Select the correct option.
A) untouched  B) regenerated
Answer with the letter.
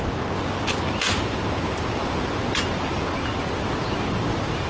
A